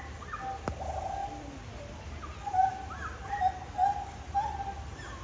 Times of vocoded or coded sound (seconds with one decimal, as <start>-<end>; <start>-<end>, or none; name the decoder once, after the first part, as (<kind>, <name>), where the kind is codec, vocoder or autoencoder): none